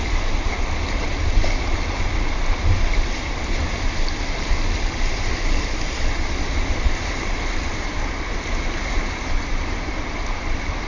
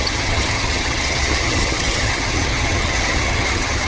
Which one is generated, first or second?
second